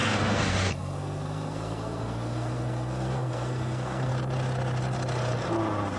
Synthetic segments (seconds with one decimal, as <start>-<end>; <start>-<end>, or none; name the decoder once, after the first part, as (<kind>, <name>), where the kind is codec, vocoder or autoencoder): 0.0-4.1 (codec, SNAC)